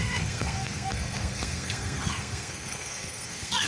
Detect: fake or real fake